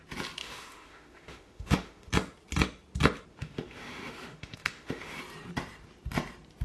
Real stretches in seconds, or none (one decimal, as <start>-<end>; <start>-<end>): 0.0-0.4; 2.1-3.3; 5.2-6.6

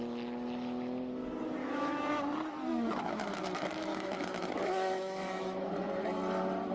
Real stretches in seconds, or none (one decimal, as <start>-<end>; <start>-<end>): 0.0-1.6; 2.1-2.7; 5.7-6.7

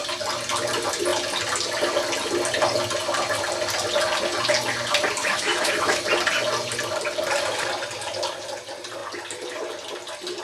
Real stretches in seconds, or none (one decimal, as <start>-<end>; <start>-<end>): 0.0-5.2; 6.0-10.4